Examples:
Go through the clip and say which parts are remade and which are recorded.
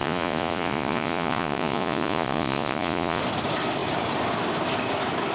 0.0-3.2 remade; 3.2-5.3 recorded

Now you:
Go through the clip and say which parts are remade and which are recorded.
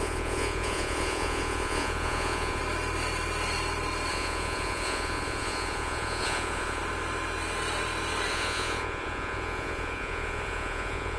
0.0-2.6 remade; 2.6-4.1 recorded; 4.1-6.8 remade; 6.8-8.3 recorded; 8.3-11.2 remade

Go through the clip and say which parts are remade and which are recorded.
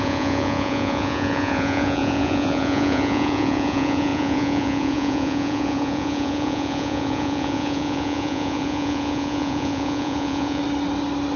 0.0-10.6 remade; 10.6-11.4 recorded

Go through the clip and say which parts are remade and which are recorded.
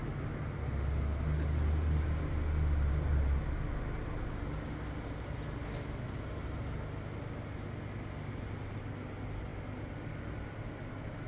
0.0-11.3 recorded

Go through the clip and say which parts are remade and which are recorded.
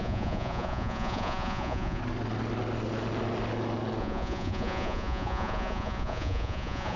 0.0-2.0 remade; 2.0-4.0 recorded; 4.0-7.0 remade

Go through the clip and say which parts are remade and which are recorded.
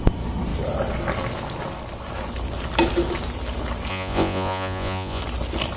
0.0-3.9 recorded; 3.9-5.2 remade; 5.2-5.8 recorded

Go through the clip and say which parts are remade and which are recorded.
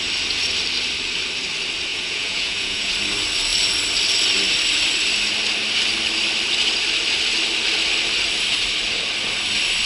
0.0-1.9 recorded; 1.9-2.9 remade; 2.9-9.9 recorded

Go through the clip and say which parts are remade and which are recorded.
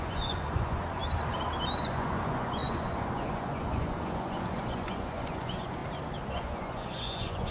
0.0-1.0 remade; 1.0-1.8 recorded; 1.8-5.8 remade; 5.8-6.3 recorded; 6.3-7.5 remade